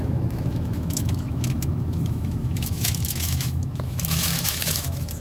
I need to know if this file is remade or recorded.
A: remade